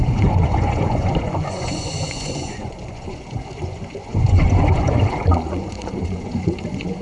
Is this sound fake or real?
fake